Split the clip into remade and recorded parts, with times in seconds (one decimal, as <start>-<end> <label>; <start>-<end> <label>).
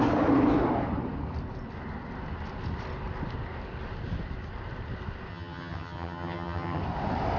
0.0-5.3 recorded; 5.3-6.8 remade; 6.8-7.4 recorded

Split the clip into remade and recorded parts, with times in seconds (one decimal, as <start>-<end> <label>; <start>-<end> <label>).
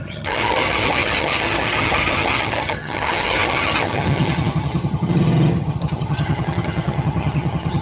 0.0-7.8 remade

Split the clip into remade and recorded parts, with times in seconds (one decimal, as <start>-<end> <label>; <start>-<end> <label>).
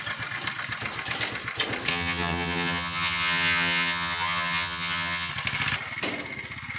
0.0-1.9 recorded; 1.9-5.3 remade; 5.3-6.8 recorded